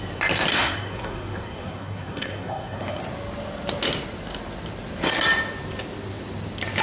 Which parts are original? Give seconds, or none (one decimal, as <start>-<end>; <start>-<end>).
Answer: 0.0-0.5; 3.0-6.8